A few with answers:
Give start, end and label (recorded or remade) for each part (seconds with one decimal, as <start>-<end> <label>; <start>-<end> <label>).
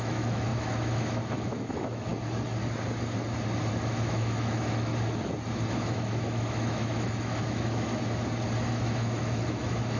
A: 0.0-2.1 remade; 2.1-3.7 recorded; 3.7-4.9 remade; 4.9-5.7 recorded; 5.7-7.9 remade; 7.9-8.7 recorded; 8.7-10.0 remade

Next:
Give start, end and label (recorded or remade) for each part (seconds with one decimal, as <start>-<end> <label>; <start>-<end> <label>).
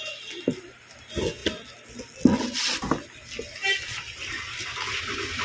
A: 0.0-5.4 recorded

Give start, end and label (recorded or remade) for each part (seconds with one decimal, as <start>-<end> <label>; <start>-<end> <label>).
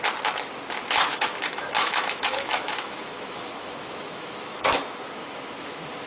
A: 0.0-1.1 recorded; 1.1-4.8 remade; 4.8-5.2 recorded; 5.2-6.1 remade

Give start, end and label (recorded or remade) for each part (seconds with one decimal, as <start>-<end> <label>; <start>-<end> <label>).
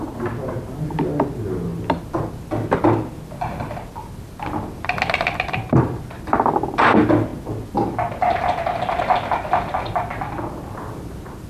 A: 0.0-11.5 recorded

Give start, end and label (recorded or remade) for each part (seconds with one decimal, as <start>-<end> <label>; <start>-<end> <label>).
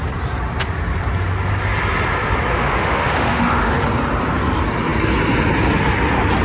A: 0.0-2.5 recorded; 2.5-3.7 remade; 3.7-6.4 recorded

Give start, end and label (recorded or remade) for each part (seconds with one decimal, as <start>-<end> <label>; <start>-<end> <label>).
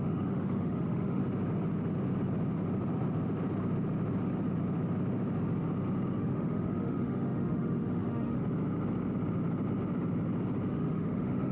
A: 0.0-1.2 remade; 1.2-6.2 recorded; 6.2-8.4 remade; 8.4-10.7 recorded; 10.7-11.5 remade